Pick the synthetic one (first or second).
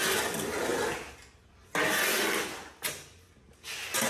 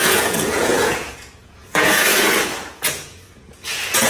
second